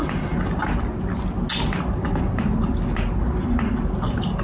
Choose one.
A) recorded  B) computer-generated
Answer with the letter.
A